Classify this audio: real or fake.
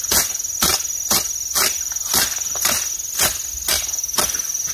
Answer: real